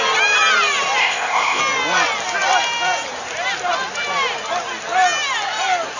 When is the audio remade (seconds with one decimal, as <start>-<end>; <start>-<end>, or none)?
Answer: 1.0-1.6